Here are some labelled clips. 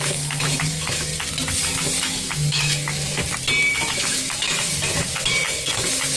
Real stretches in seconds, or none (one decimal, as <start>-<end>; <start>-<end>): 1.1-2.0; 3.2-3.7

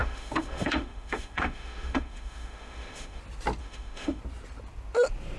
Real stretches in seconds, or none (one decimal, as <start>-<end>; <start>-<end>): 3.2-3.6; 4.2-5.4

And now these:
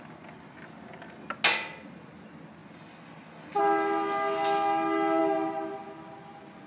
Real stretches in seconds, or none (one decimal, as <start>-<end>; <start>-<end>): 0.0-6.7

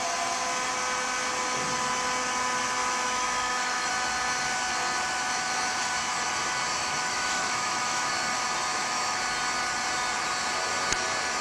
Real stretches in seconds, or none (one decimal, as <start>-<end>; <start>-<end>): 0.0-2.8; 3.9-6.8; 8.1-8.7; 9.2-11.4

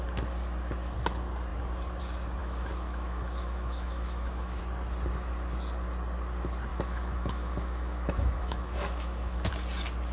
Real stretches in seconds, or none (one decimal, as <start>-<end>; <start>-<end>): 0.0-2.4; 4.6-6.7; 9.5-10.1

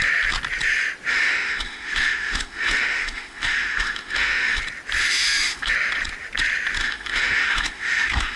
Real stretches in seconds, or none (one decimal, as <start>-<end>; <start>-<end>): 0.0-1.1; 4.6-5.0; 5.7-6.8

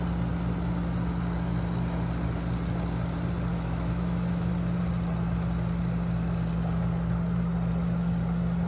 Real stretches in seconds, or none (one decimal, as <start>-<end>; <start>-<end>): 0.0-3.5; 4.5-8.7

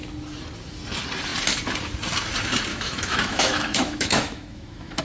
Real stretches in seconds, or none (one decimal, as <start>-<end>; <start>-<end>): 0.0-2.7